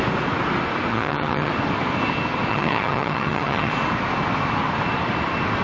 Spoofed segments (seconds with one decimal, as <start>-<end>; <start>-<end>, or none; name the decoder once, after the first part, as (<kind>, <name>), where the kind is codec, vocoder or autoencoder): 0.9-1.5 (vocoder, HiFi-GAN); 2.5-3.7